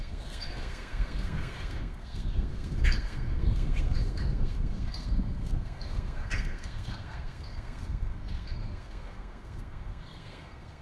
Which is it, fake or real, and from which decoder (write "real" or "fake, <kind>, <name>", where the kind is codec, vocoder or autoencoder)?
fake, codec, SNAC